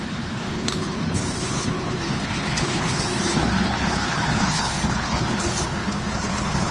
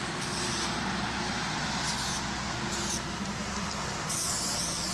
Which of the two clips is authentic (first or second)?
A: second